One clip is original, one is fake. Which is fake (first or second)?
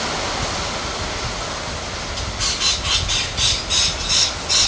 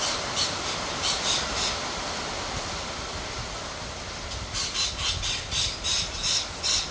second